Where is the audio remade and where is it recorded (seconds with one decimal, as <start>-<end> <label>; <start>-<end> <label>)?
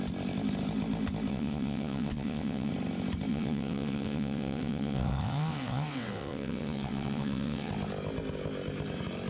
0.0-1.3 recorded; 1.3-2.7 remade; 2.7-3.3 recorded; 3.3-7.7 remade; 7.7-9.3 recorded